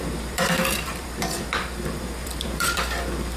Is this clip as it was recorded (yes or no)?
no